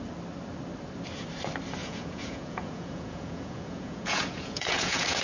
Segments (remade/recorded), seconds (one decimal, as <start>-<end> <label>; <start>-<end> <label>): 0.0-1.8 recorded; 1.8-5.2 remade